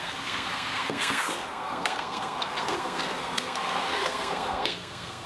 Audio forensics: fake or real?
fake